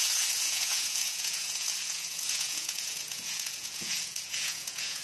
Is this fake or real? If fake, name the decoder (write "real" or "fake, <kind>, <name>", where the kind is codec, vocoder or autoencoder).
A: fake, vocoder, Vocos